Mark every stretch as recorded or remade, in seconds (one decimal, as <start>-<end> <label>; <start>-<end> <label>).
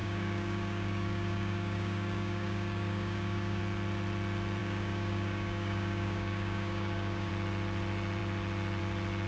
0.0-3.6 remade; 3.6-4.6 recorded; 4.6-7.3 remade; 7.3-9.3 recorded